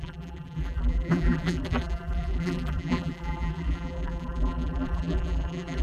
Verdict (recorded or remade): remade